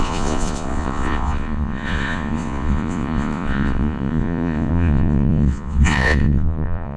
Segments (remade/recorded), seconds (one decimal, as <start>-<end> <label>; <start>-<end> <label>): 0.0-7.0 remade